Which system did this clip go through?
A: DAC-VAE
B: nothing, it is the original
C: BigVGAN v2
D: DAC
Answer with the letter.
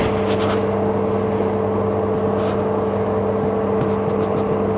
B